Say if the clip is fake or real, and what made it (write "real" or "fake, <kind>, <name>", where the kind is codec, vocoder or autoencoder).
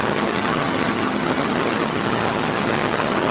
fake, vocoder, HiFi-GAN